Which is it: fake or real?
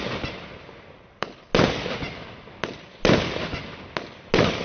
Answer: real